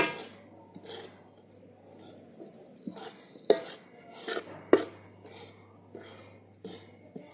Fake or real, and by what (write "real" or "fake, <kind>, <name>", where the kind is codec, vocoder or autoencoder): real